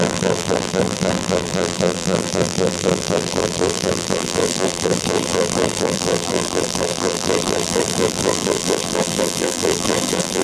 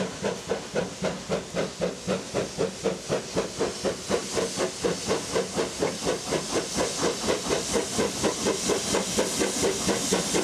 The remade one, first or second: first